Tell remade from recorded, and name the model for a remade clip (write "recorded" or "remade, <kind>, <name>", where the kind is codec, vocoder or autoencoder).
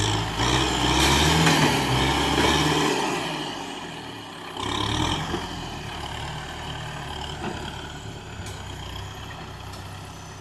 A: recorded